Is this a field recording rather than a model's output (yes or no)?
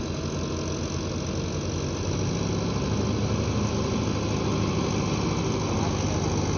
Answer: yes